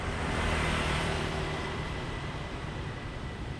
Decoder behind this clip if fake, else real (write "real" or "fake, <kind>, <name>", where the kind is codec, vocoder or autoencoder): fake, vocoder, BigVGAN v2